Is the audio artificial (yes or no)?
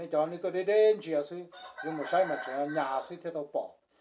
no